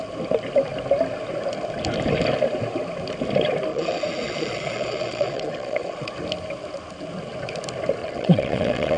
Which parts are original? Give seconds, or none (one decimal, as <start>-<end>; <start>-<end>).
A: 0.0-3.7; 6.1-8.0